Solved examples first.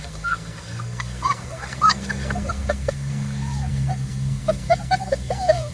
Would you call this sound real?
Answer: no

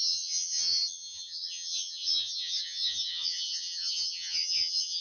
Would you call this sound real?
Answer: no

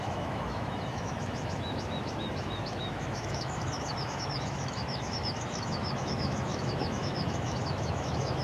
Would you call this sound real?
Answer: no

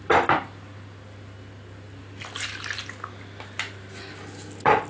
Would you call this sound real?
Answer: yes